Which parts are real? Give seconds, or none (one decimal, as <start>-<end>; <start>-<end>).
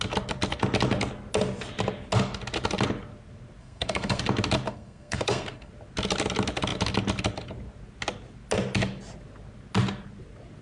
0.0-3.6; 4.2-4.7; 5.7-10.6